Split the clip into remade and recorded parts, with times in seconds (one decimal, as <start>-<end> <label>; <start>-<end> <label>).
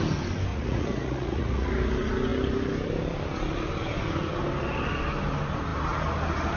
0.0-0.5 recorded; 0.5-1.7 remade; 1.7-6.6 recorded